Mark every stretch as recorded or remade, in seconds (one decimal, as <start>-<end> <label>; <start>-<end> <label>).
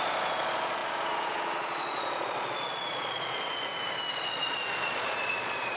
0.0-3.7 remade; 3.7-4.2 recorded; 4.2-5.8 remade